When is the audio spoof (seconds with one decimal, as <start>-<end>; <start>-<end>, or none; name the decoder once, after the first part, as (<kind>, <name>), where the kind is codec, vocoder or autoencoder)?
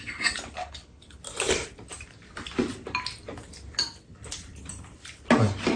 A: 0.6-1.2 (codec, HILCodec)